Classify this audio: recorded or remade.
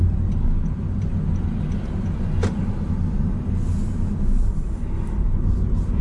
recorded